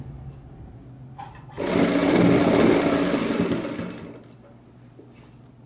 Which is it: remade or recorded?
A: recorded